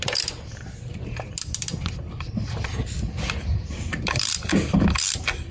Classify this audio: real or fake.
real